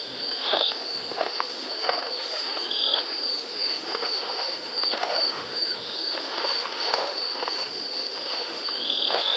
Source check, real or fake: fake